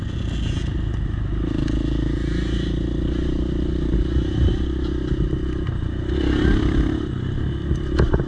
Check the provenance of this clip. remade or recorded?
recorded